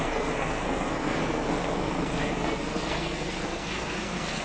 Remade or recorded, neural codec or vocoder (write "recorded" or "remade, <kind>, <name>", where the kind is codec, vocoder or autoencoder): remade, codec, SNAC